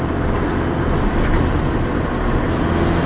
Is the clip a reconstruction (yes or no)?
no